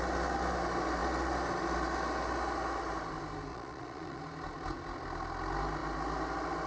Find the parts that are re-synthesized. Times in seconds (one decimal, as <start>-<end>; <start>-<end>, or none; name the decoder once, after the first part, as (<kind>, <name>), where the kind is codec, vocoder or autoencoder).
3.5-4.2 (vocoder, Vocos)